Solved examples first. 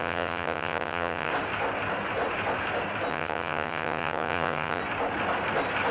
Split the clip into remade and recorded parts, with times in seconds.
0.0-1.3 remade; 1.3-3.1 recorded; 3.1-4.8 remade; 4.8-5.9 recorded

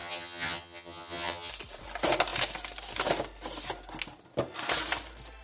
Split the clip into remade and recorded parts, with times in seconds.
0.0-1.5 remade; 1.5-5.4 recorded

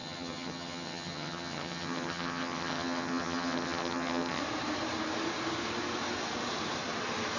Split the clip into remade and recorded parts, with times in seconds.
0.0-4.4 remade; 4.4-7.4 recorded

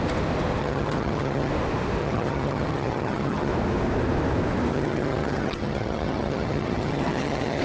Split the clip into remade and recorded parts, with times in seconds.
0.0-0.6 recorded; 0.6-1.5 remade; 1.5-2.0 recorded; 2.0-3.5 remade; 3.5-4.7 recorded; 4.7-7.6 remade

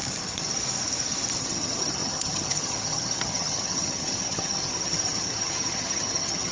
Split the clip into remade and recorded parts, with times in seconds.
0.0-1.4 recorded; 1.4-6.5 remade

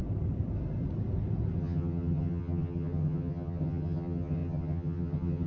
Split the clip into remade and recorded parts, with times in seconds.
0.0-1.6 recorded; 1.6-5.5 remade

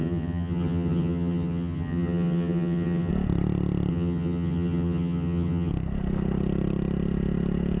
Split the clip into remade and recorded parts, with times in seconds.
0.0-3.1 remade; 3.1-3.9 recorded; 3.9-5.7 remade; 5.7-7.8 recorded

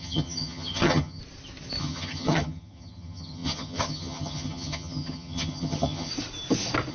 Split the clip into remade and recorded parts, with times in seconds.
0.0-1.2 remade; 1.2-1.8 recorded; 1.8-6.1 remade; 6.1-6.9 recorded